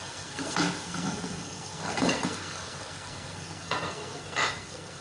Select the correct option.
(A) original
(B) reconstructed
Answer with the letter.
B